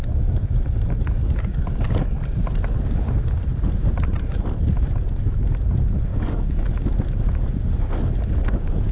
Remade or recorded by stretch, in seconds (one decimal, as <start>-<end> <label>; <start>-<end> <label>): 0.0-6.1 recorded; 6.1-6.7 remade; 6.7-8.9 recorded